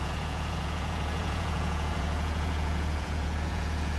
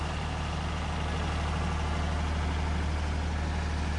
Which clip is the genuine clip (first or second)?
second